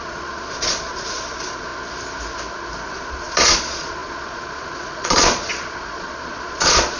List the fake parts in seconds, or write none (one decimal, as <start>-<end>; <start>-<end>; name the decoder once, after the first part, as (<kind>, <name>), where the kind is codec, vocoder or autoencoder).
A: 0.0-1.7 (vocoder, Vocos); 2.9-7.0